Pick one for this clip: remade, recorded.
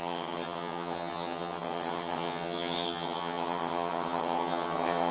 remade